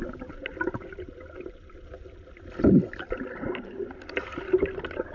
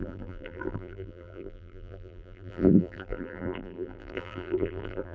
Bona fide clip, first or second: first